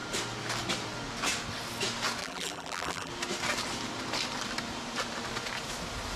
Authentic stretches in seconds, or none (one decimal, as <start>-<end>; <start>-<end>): 0.0-2.2; 3.1-6.2